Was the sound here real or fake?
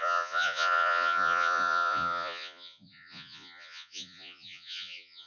fake